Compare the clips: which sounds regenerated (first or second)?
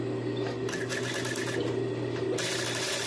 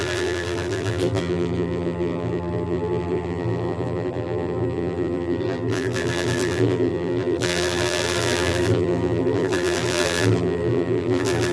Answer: second